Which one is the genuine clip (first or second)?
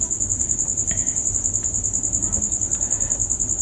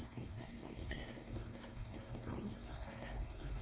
first